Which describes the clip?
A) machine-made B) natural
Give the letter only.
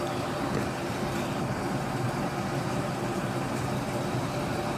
B